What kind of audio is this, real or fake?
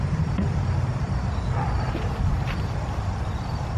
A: real